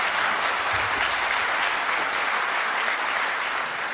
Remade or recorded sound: recorded